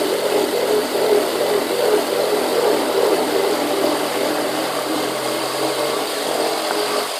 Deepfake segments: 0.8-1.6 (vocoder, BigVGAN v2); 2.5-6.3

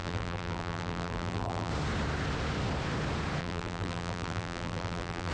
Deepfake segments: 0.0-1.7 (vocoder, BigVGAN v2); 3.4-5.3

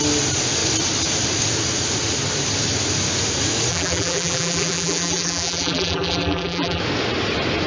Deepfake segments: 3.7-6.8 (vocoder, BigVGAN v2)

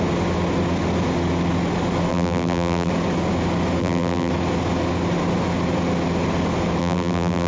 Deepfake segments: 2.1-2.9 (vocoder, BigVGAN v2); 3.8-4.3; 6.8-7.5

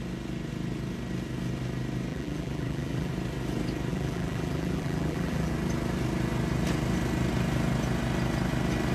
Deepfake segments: 2.1-3.1 (vocoder, BigVGAN v2); 3.9-5.5

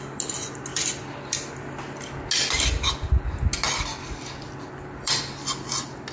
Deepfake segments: 0.7-1.5 (vocoder, BigVGAN v2); 3.9-5.2

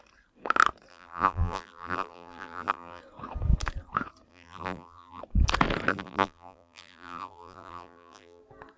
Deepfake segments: 0.9-3.0 (vocoder, BigVGAN v2); 4.3-5.2; 5.9-8.4

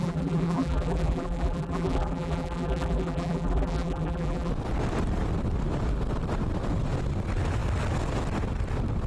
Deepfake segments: 0.0-4.5 (vocoder, BigVGAN v2)